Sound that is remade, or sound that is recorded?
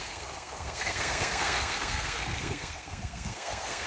remade